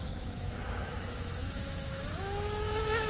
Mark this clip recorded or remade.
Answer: remade